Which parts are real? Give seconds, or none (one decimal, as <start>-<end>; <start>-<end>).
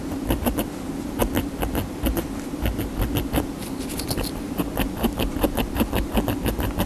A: 0.0-6.9